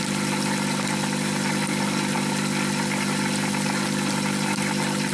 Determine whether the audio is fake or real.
real